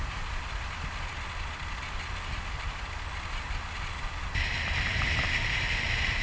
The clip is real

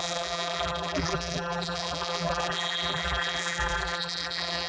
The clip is fake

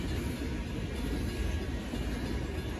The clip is real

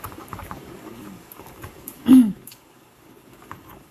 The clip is fake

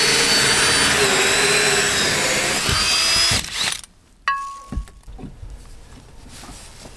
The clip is real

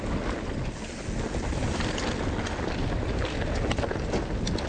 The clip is real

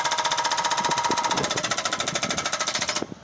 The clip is fake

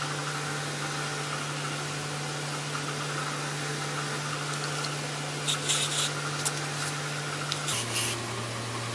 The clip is real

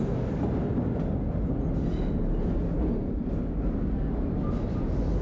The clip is real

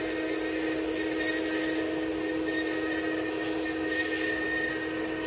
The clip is real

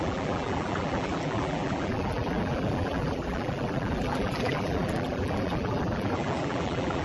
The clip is fake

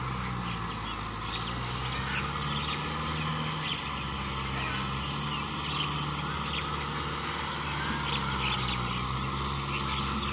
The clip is real